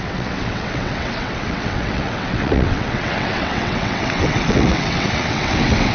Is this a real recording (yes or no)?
no